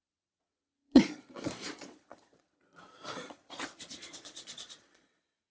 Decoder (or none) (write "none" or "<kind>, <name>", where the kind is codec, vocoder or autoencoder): vocoder, Vocos